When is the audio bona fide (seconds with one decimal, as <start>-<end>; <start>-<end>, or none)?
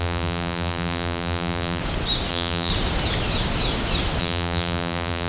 1.8-2.3; 2.7-4.2